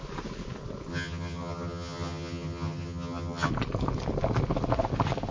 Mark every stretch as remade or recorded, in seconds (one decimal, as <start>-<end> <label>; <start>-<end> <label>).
0.0-0.9 recorded; 0.9-3.5 remade; 3.5-5.3 recorded